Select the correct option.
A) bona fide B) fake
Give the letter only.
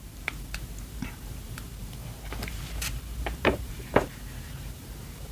B